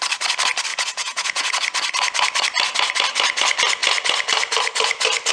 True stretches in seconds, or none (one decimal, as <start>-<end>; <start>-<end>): 0.0-0.7; 1.5-5.3